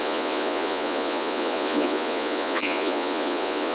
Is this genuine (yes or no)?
no